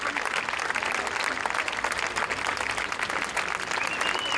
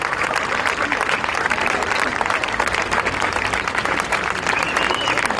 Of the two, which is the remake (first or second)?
second